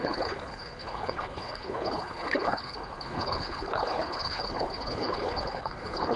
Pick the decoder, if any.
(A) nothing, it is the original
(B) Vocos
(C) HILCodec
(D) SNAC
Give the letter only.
C